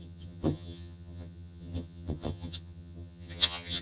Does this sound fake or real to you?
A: fake